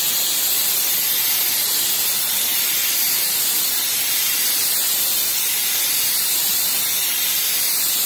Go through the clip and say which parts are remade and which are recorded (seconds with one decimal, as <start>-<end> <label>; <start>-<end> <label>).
0.0-2.5 recorded; 2.5-3.7 remade; 3.7-8.1 recorded